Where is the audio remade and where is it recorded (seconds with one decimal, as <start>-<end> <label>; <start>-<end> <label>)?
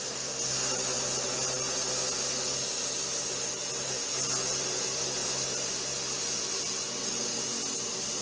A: 0.0-8.2 recorded